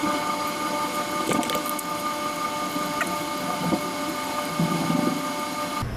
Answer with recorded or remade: recorded